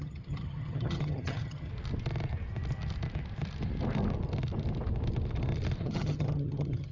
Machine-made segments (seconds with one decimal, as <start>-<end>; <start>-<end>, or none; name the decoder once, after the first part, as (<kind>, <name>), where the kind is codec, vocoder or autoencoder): 0.0-1.7 (vocoder, HiFi-GAN); 5.8-6.9